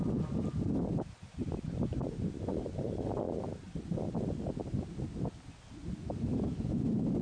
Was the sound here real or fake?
real